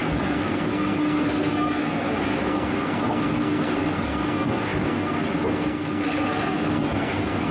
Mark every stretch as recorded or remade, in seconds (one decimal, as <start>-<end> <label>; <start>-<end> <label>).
0.0-7.5 remade

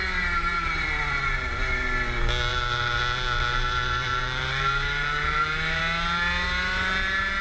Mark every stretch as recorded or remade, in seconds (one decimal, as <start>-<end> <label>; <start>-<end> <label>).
0.0-2.5 recorded; 2.5-3.0 remade; 3.0-3.5 recorded; 3.5-5.8 remade; 5.8-7.4 recorded

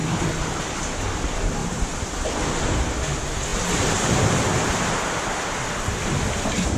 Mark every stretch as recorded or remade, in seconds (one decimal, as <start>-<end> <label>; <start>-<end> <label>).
0.0-0.8 remade; 0.8-1.6 recorded; 1.6-2.4 remade; 2.4-3.5 recorded; 3.5-5.7 remade; 5.7-6.8 recorded

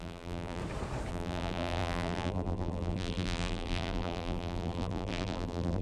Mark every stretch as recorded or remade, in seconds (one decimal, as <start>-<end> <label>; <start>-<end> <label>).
0.0-0.6 remade; 0.6-1.1 recorded; 1.1-5.8 remade

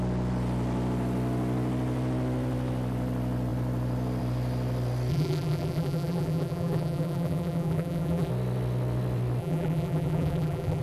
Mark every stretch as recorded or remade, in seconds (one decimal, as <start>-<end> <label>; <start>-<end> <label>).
0.0-5.1 recorded; 5.1-8.3 remade; 8.3-9.4 recorded; 9.4-10.8 remade

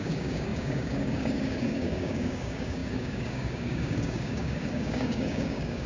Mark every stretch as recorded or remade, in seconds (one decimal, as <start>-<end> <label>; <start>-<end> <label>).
0.0-5.9 remade

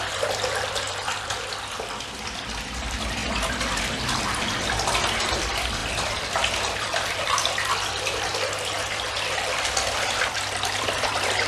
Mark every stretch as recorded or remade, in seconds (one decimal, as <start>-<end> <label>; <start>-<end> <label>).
0.0-3.2 remade; 3.2-3.8 recorded; 3.8-5.8 remade; 5.8-6.5 recorded; 6.5-8.3 remade; 8.3-8.8 recorded; 8.8-11.5 remade